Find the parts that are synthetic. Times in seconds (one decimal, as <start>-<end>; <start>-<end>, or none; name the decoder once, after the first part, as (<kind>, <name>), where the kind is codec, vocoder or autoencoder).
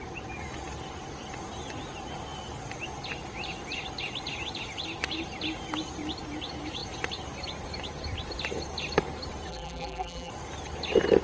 9.5-10.3 (vocoder, BigVGAN v2)